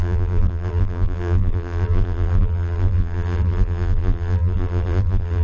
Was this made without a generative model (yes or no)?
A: no